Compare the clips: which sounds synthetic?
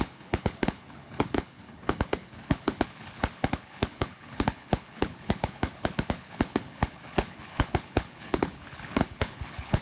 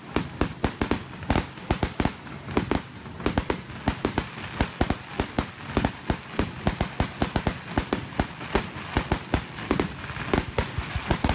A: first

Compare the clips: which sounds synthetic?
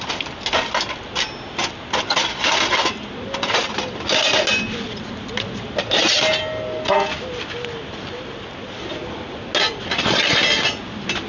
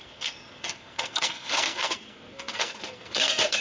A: second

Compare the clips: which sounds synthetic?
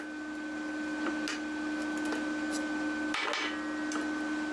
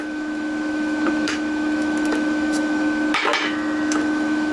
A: second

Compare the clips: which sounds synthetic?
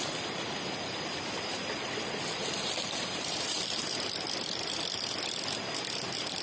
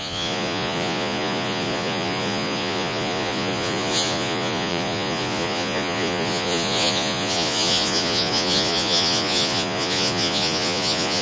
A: second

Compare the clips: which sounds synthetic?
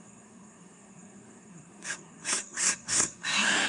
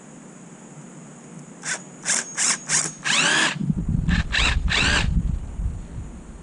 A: first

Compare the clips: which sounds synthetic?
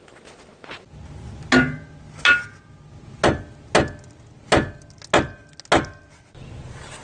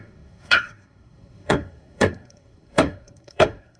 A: second